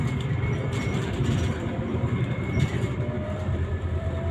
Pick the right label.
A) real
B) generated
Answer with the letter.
B